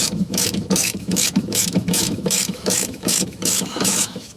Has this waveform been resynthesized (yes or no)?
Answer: yes